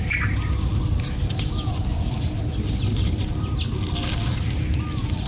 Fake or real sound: real